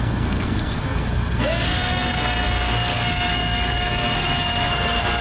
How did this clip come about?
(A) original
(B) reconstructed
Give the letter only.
B